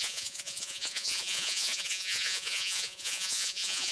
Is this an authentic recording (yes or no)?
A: no